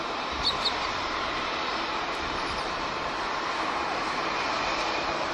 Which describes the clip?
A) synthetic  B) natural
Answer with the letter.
A